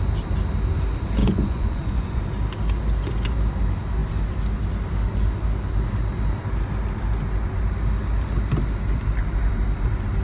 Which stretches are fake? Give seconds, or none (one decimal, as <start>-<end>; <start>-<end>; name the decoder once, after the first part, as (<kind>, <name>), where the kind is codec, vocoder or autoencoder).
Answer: 1.2-2.2 (vocoder, Vocos)